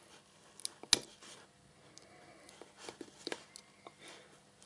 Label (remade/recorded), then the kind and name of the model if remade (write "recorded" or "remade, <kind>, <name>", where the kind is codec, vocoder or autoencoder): recorded